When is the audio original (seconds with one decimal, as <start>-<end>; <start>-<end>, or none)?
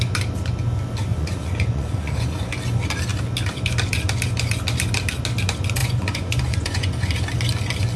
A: 0.0-1.1; 2.5-5.8; 7.1-8.0